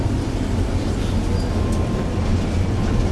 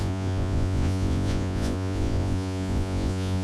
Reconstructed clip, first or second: second